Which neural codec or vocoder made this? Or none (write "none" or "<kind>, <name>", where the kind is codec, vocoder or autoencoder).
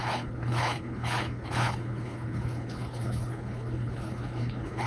codec, HILCodec